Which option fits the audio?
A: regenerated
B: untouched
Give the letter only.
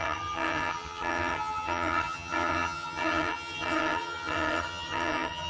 A